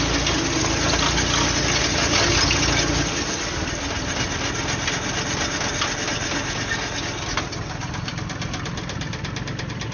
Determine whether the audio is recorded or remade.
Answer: recorded